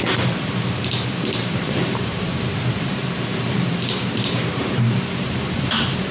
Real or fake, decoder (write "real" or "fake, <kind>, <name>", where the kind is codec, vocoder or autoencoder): fake, vocoder, BigVGAN v2